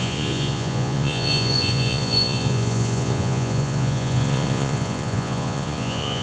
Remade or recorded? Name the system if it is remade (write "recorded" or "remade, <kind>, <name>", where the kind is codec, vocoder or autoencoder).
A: remade, vocoder, Vocos